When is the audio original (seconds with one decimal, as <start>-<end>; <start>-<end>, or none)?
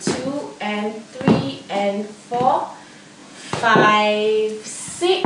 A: 0.0-3.2; 3.9-5.3